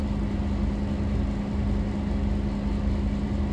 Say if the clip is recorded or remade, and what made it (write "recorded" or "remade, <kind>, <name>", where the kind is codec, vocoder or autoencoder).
recorded